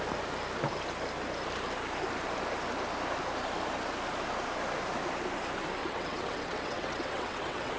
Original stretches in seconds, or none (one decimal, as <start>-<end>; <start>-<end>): 0.0-5.8

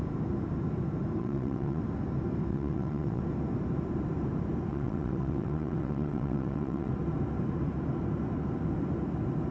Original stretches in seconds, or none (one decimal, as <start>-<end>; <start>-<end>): 0.0-1.2; 1.8-2.5; 3.2-4.7; 6.9-9.5

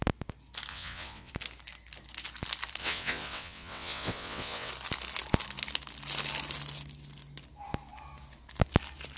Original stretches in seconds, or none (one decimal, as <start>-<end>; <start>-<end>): 0.0-0.7; 1.3-2.8; 4.7-9.2

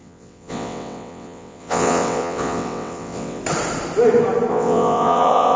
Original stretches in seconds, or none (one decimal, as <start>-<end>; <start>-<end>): 3.4-4.5

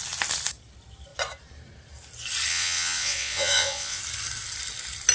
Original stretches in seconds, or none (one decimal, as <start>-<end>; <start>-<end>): 0.0-2.5; 4.0-5.1